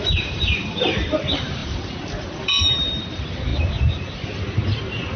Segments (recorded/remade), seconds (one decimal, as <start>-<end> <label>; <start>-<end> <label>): 0.0-3.5 remade; 3.5-4.4 recorded; 4.4-5.2 remade

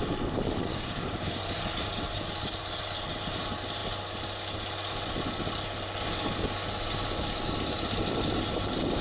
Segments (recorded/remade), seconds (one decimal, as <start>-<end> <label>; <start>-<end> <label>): 0.0-0.7 recorded; 0.7-1.3 remade; 1.3-9.0 recorded

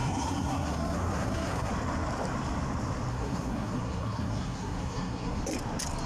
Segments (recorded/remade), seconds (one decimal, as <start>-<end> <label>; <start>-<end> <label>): 0.0-1.7 remade; 1.7-3.1 recorded; 3.1-5.4 remade; 5.4-6.1 recorded

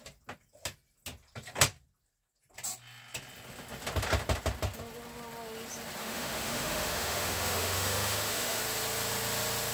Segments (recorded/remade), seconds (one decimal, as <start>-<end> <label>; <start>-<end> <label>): 0.0-6.0 recorded; 6.0-8.6 remade; 8.6-9.7 recorded

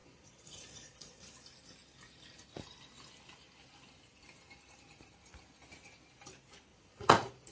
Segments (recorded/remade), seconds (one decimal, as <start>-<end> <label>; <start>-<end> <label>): 0.0-1.3 remade; 1.3-6.7 recorded; 6.7-7.5 remade